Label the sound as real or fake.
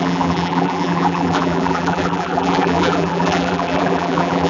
fake